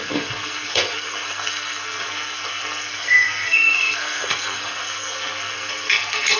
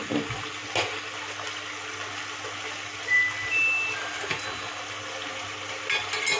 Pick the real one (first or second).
second